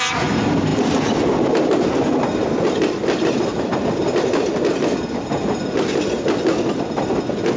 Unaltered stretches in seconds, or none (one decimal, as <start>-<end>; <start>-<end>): 0.0-7.6